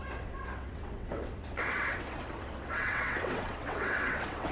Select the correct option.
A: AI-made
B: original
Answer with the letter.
A